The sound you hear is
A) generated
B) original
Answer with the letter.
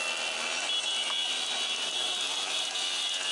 B